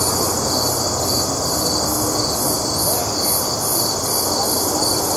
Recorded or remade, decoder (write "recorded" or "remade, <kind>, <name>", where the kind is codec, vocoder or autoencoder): recorded